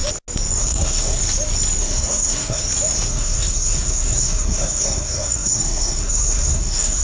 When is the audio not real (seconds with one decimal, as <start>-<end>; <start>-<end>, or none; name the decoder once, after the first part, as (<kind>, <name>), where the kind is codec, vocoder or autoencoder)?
0.6-1.2 (codec, SNAC); 1.8-2.6; 3.1-7.0